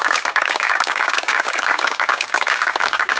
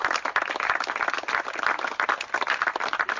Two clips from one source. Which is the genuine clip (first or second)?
second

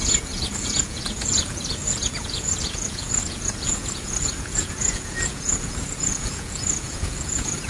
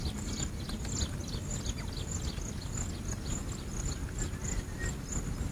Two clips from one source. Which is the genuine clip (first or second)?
second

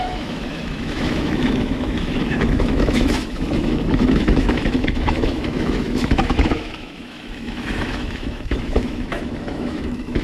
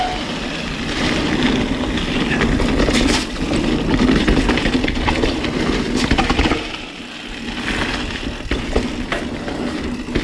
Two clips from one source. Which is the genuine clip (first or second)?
second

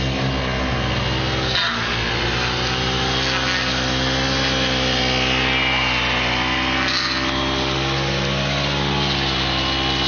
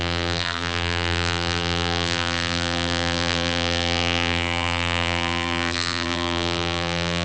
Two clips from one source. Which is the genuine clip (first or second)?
first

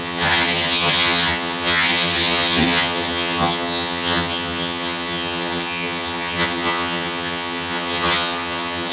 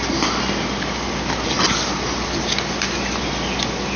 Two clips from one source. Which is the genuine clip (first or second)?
second